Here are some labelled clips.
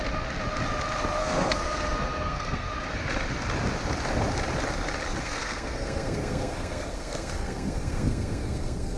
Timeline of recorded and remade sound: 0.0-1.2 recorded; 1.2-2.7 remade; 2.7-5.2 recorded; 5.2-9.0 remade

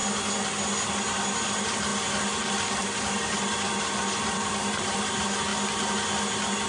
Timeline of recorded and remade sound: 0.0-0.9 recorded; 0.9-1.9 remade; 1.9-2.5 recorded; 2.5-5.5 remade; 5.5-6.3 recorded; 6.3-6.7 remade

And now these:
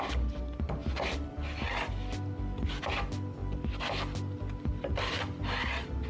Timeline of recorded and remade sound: 0.0-6.1 recorded